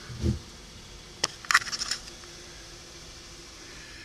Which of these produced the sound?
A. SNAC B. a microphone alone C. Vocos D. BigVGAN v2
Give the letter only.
B